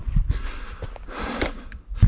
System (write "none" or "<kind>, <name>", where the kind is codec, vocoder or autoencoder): none